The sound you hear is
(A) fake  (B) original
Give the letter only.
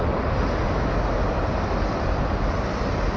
B